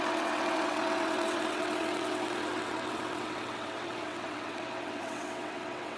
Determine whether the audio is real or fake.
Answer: fake